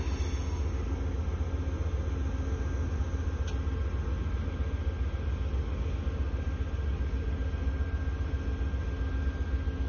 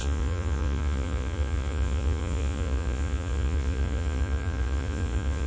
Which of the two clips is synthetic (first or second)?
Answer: second